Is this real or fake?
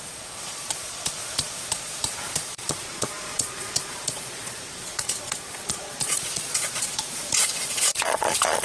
fake